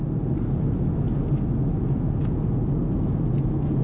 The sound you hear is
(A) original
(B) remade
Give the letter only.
A